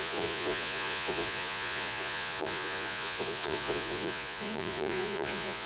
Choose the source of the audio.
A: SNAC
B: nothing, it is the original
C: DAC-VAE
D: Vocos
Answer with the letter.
D